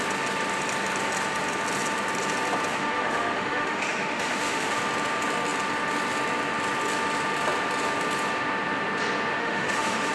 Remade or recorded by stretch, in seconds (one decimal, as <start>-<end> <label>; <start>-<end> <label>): 0.0-2.7 recorded; 2.7-4.8 remade; 4.8-9.4 recorded; 9.4-10.1 remade